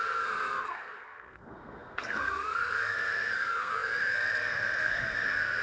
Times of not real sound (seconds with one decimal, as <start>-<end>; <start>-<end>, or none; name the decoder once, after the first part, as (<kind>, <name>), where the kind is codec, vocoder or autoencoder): 0.0-5.6 (codec, SNAC)